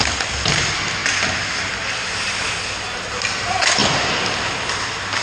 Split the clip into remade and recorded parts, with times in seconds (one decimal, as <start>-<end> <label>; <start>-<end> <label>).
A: 0.0-5.2 recorded